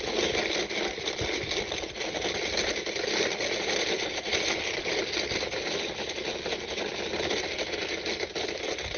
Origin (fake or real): real